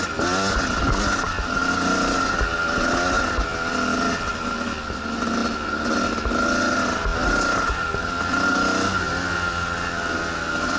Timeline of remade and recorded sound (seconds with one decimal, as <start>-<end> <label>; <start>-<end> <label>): 0.0-10.8 recorded

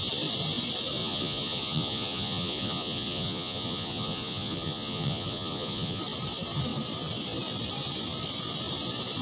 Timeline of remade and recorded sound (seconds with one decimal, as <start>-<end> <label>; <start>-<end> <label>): 0.0-1.0 recorded; 1.0-6.0 remade; 6.0-9.2 recorded

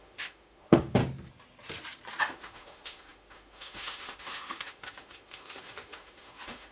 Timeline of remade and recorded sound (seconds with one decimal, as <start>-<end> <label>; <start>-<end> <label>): 0.0-1.0 remade; 1.0-2.2 recorded; 2.2-6.7 remade

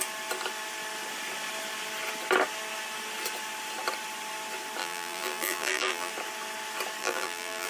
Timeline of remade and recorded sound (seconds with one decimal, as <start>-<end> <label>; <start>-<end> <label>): 0.0-4.8 recorded; 4.8-6.1 remade; 6.1-7.0 recorded; 7.0-7.7 remade